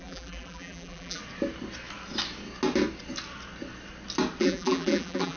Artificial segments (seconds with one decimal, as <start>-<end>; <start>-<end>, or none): 0.0-1.2; 4.4-5.4